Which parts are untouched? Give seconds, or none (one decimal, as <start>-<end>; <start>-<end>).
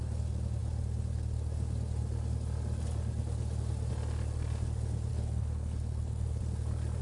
0.0-5.1; 6.4-7.0